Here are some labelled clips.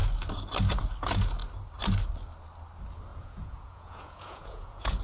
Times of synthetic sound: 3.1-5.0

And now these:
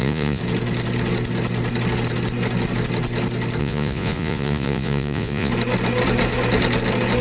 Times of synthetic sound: 0.0-0.4; 3.6-5.5

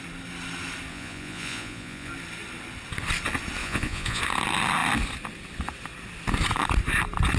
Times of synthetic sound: 0.9-2.1; 3.6-4.2

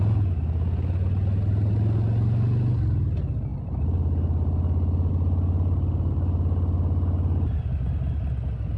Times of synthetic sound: none